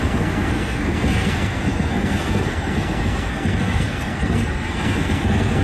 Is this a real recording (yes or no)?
no